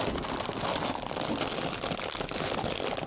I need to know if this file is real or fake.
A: real